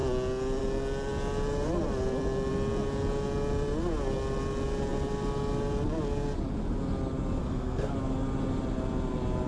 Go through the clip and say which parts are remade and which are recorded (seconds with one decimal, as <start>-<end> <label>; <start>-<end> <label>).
0.0-7.4 recorded; 7.4-7.9 remade; 7.9-9.5 recorded